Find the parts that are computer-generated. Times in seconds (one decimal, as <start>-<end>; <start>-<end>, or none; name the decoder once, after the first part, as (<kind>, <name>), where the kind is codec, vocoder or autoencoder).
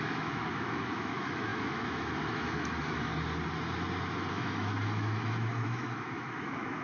0.0-3.1 (autoencoder, DAC-VAE); 4.3-6.8